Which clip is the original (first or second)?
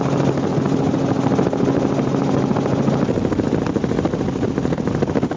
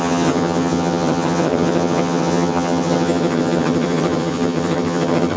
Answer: first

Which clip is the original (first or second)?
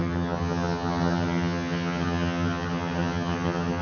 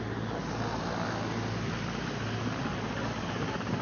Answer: second